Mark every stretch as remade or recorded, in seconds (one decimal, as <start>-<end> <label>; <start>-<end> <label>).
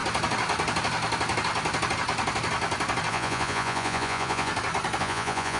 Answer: 0.0-3.1 recorded; 3.1-4.5 remade; 4.5-5.0 recorded; 5.0-5.6 remade